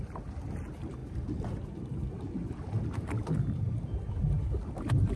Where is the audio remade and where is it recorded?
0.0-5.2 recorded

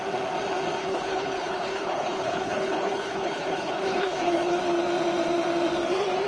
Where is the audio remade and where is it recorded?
0.0-0.8 recorded; 0.8-4.6 remade; 4.6-6.3 recorded